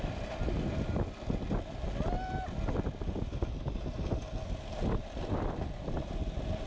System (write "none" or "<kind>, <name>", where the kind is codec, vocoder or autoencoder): none